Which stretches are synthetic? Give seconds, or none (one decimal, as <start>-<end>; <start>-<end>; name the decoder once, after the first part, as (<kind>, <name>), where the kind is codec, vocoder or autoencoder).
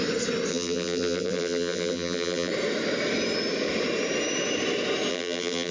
0.5-2.5 (vocoder, BigVGAN v2); 5.1-5.7